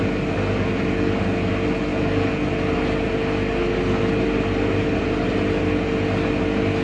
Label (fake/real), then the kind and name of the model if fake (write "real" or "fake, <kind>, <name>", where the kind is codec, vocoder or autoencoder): real